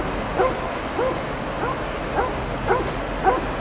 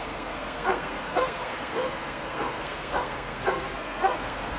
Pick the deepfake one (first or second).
second